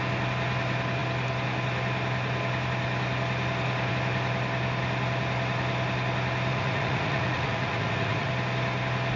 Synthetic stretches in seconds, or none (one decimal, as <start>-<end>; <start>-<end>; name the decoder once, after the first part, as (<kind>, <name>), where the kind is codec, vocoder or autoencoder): 6.5-8.3 (vocoder, Vocos)